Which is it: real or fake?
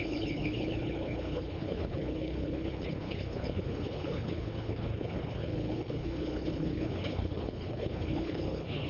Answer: fake